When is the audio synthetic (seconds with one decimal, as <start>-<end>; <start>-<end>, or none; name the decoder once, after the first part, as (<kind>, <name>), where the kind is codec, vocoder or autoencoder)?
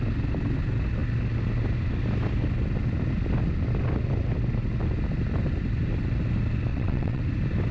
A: 6.7-7.2 (vocoder, WaveNeXt)